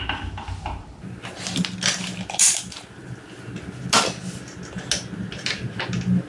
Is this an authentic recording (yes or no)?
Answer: yes